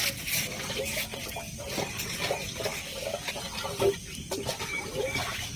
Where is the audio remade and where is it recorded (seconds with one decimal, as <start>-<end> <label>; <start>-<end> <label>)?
0.0-5.6 recorded